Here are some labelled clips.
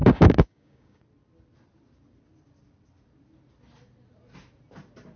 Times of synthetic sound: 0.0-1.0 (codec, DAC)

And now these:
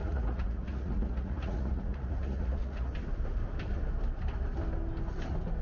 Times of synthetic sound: 0.0-2.9 (vocoder, Vocos)

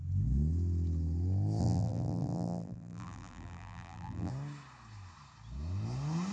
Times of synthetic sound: 1.6-4.3 (vocoder, BigVGAN v2)

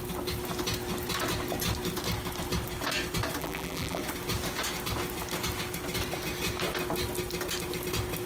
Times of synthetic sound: 3.4-4.0 (vocoder, BigVGAN v2)

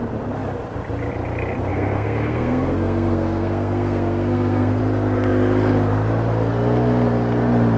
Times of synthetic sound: 1.7-4.8 (codec, SNAC)

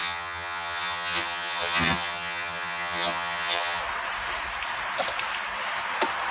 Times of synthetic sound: 0.0-3.8 (vocoder, HiFi-GAN)

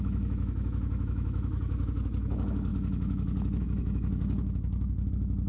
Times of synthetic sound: 0.0-5.5 (autoencoder, DAC-VAE)

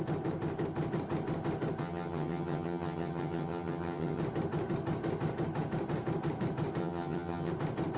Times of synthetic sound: 1.8-4.2 (vocoder, HiFi-GAN); 6.8-7.5